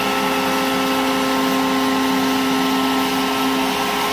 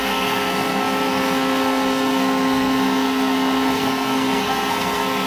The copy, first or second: second